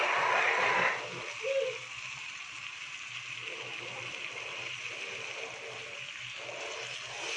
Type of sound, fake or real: real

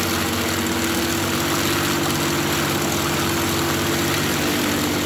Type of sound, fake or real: real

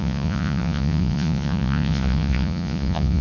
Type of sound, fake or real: fake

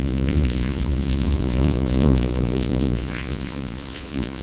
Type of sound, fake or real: fake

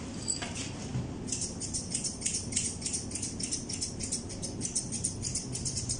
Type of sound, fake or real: real